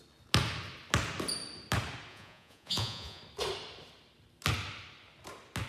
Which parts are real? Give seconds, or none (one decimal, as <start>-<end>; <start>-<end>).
0.0-2.1; 3.2-5.7